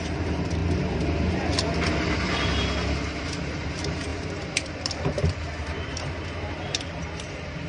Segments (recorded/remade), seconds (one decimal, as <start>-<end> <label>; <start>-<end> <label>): 0.0-0.6 remade; 0.6-3.5 recorded; 3.5-7.7 remade